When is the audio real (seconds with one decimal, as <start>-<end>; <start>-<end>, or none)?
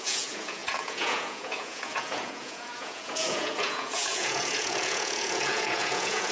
none